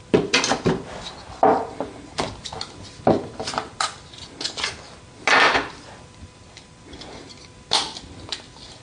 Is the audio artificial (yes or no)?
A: no